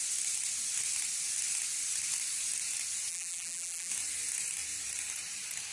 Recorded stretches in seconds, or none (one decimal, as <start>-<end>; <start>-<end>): 0.0-3.1; 3.9-5.7